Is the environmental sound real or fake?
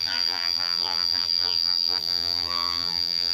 fake